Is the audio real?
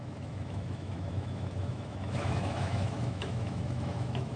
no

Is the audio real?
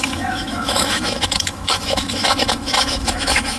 no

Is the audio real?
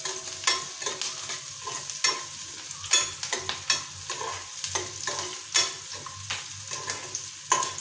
yes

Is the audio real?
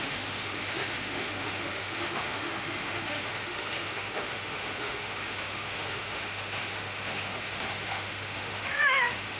no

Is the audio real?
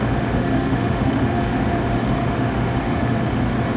no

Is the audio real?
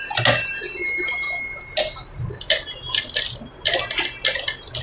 yes